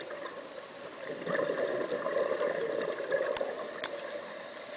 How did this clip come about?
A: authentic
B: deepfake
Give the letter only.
A